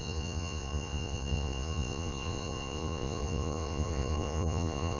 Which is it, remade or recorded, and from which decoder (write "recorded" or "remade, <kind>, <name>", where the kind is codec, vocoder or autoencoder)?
remade, vocoder, Vocos